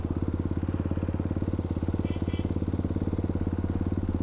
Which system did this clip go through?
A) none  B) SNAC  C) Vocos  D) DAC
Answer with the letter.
A